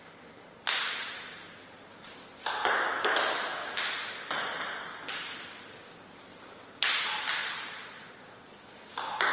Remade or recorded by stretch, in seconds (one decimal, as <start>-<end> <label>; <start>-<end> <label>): 0.0-7.4 recorded; 7.4-8.8 remade; 8.8-9.3 recorded